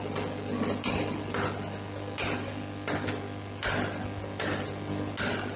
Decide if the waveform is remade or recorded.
recorded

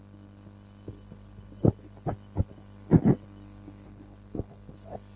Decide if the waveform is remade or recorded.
recorded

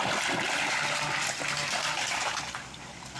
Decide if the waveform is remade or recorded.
recorded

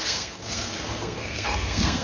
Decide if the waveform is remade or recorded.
remade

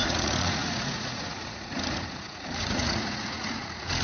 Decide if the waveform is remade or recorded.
remade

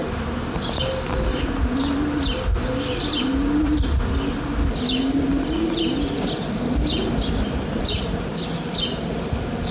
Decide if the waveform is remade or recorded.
recorded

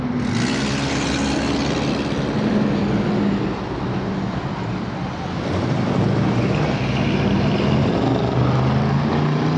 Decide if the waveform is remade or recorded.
recorded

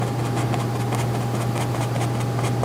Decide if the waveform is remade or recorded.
recorded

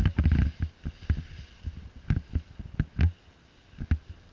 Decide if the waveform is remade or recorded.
recorded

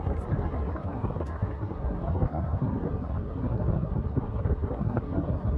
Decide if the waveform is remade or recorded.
remade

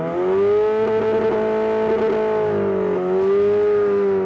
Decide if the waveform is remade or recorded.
recorded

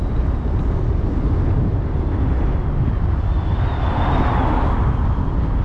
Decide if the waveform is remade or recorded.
recorded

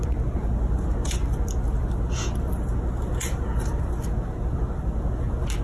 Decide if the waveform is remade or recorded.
recorded